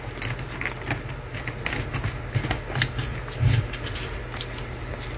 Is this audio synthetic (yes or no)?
no